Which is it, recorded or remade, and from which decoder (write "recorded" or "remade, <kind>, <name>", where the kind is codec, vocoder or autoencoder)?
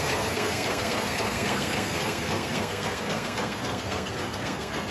remade, codec, SNAC